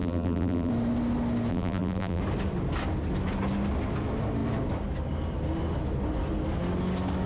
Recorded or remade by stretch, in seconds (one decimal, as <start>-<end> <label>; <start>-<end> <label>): 0.0-0.7 remade; 0.7-1.5 recorded; 1.5-2.2 remade; 2.2-7.3 recorded